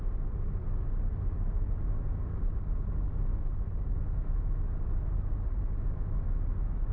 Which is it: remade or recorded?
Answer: recorded